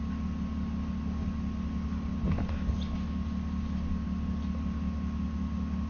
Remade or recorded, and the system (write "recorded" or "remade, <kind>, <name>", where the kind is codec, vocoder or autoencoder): recorded